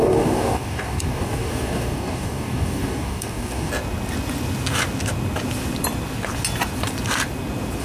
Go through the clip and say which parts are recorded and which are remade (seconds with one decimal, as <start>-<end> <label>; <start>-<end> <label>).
0.0-3.7 remade; 3.7-7.8 recorded